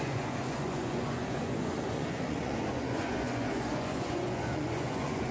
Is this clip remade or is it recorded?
remade